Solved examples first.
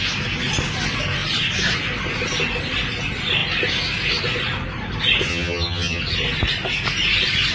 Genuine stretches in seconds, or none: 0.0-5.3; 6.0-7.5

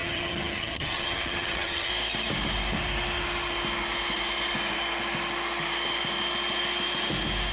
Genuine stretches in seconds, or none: 1.9-7.5

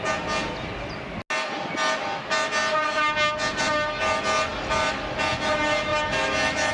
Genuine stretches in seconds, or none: 0.0-6.7

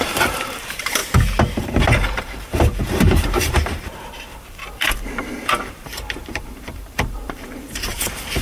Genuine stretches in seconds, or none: 1.0-1.6

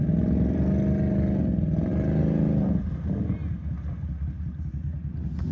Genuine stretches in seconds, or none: 0.0-5.5

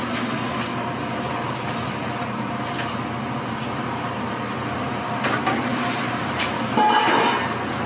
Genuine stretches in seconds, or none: 0.0-5.7; 6.6-7.9

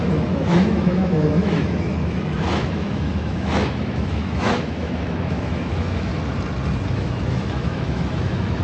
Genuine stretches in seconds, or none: 6.1-6.9

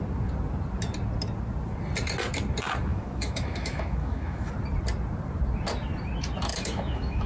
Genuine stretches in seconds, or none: 0.0-2.9; 4.5-6.5